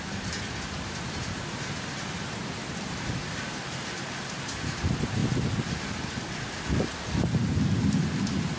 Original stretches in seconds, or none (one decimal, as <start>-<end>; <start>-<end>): 5.2-8.6